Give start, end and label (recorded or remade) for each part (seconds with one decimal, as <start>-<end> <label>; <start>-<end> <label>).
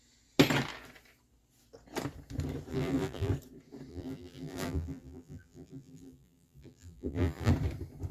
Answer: 0.0-2.7 recorded; 2.7-3.3 remade; 3.3-3.9 recorded; 3.9-7.5 remade; 7.5-8.1 recorded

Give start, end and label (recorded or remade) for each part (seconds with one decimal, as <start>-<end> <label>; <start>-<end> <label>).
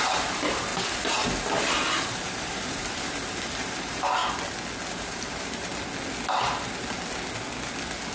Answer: 0.0-4.2 remade; 4.2-4.9 recorded; 4.9-5.7 remade; 5.7-8.1 recorded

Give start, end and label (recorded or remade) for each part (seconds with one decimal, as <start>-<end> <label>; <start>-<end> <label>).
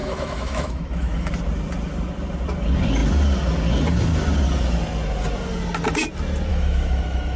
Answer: 0.0-1.3 remade; 1.3-6.5 recorded; 6.5-7.4 remade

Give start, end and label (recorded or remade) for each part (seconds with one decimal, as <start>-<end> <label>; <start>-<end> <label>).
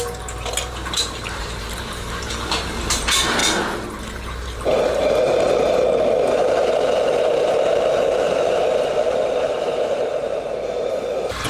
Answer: 0.0-3.4 remade; 3.4-4.0 recorded; 4.0-11.5 remade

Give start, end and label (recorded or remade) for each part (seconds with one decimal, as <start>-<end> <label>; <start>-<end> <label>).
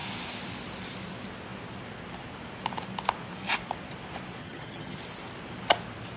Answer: 0.0-4.4 recorded; 4.4-5.0 remade; 5.0-6.2 recorded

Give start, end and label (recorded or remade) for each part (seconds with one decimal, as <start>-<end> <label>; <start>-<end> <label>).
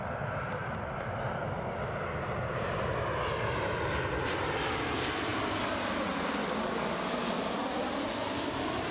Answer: 0.0-6.4 recorded; 6.4-7.0 remade; 7.0-8.9 recorded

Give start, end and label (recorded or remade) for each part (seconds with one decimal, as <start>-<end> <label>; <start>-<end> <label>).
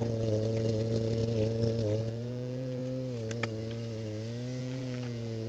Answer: 0.0-1.2 remade; 1.2-2.0 recorded; 2.0-2.8 remade; 2.8-4.6 recorded; 4.6-5.5 remade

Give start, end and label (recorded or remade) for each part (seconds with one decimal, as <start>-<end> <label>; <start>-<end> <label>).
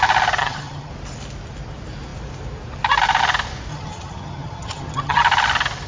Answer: 0.0-0.4 recorded; 0.4-0.9 remade; 0.9-3.7 recorded; 3.7-5.2 remade; 5.2-5.9 recorded